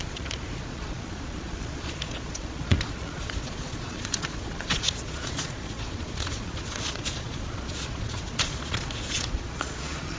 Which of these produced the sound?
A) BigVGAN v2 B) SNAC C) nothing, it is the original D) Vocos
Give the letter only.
D